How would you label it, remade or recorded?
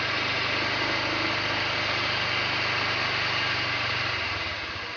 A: recorded